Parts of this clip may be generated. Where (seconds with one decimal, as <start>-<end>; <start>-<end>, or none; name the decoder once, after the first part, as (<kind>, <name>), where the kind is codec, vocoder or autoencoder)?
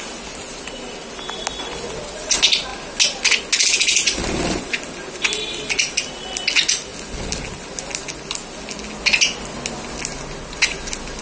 none